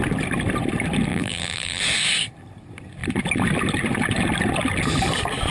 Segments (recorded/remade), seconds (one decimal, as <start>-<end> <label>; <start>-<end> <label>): 0.0-1.1 recorded; 1.1-1.8 remade; 1.8-5.5 recorded